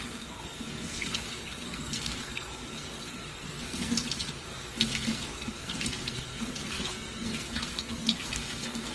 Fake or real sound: fake